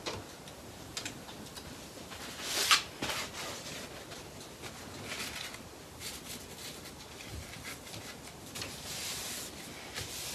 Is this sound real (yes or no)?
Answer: yes